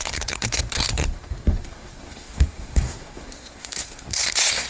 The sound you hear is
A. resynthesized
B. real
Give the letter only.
A